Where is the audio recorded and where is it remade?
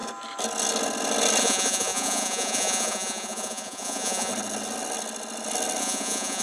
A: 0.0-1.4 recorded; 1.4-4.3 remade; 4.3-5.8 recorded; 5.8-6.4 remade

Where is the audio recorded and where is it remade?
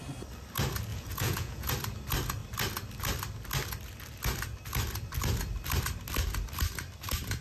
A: 0.0-0.9 recorded; 0.9-1.7 remade; 1.7-7.4 recorded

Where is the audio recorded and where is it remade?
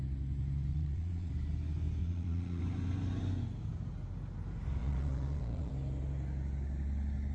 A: 0.0-0.7 recorded; 0.7-1.3 remade; 1.3-2.0 recorded; 2.0-2.6 remade; 2.6-4.8 recorded; 4.8-5.7 remade; 5.7-7.3 recorded